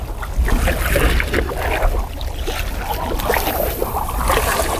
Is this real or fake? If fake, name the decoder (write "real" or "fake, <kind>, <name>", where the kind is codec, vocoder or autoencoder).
real